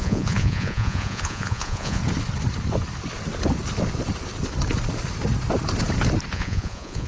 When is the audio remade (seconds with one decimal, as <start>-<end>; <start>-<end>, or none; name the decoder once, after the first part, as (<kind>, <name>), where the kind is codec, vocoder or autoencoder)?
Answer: 0.0-2.0 (vocoder, Vocos); 6.3-7.1